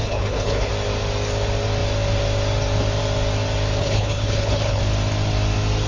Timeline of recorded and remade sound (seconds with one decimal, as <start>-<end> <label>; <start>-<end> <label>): 0.0-0.7 remade; 0.7-3.8 recorded; 3.8-4.8 remade; 4.8-5.9 recorded